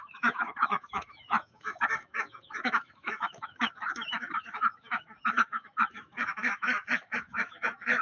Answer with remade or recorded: remade